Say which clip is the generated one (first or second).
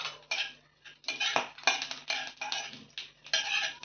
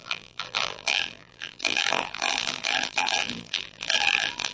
second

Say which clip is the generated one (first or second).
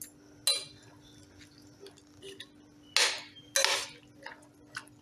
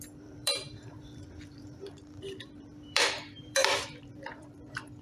second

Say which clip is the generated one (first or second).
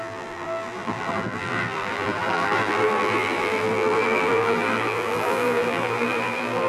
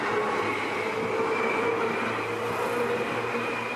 first